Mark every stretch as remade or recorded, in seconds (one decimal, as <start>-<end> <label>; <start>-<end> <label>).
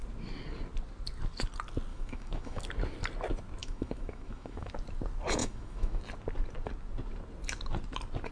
0.0-1.9 recorded; 1.9-2.6 remade; 2.6-3.6 recorded; 3.6-4.7 remade; 4.7-5.4 recorded; 5.4-6.0 remade; 6.0-8.3 recorded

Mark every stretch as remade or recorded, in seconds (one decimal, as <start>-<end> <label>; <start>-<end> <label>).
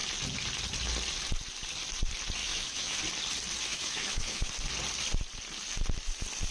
0.0-2.4 recorded; 2.4-3.0 remade; 3.0-3.7 recorded; 3.7-4.5 remade; 4.5-6.5 recorded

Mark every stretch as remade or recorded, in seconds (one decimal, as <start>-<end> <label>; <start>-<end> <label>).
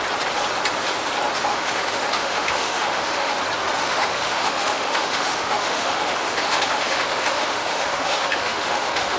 0.0-1.5 recorded; 1.5-3.3 remade; 3.3-3.8 recorded; 3.8-9.2 remade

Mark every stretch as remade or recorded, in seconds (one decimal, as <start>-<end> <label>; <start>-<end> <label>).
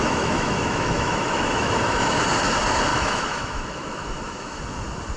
0.0-2.2 remade; 2.2-2.9 recorded; 2.9-4.6 remade; 4.6-5.2 recorded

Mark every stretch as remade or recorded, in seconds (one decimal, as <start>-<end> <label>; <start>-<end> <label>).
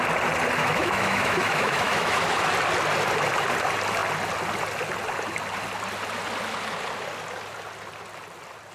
0.0-0.6 recorded; 0.6-2.5 remade; 2.5-8.7 recorded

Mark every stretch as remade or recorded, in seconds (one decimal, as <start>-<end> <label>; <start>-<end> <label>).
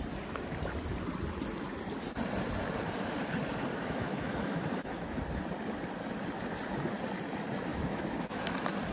0.0-3.7 recorded; 3.7-5.2 remade; 5.2-7.7 recorded; 7.7-8.4 remade; 8.4-8.9 recorded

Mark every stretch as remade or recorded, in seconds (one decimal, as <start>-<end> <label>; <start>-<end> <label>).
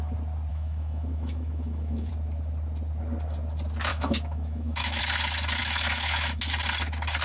0.0-0.5 recorded; 0.5-2.1 remade; 2.1-3.9 recorded; 3.9-5.0 remade; 5.0-5.6 recorded; 5.6-6.4 remade; 6.4-7.2 recorded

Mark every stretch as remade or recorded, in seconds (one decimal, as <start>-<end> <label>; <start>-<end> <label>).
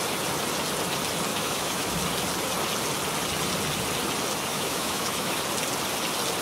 0.0-1.3 recorded; 1.3-1.9 remade; 1.9-4.5 recorded; 4.5-5.4 remade; 5.4-6.4 recorded